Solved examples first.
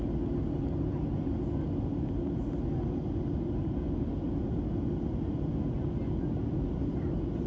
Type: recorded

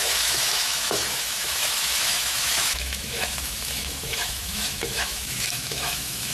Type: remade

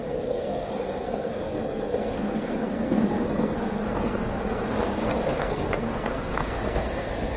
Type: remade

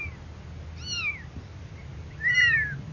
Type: recorded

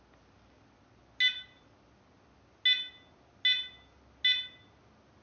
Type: recorded